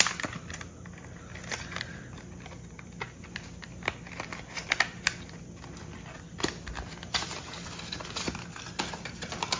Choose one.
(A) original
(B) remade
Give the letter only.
A